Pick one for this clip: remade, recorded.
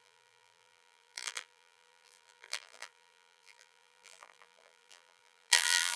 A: remade